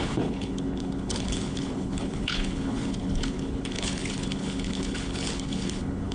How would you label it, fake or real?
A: fake